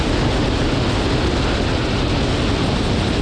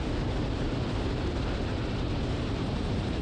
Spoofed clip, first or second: second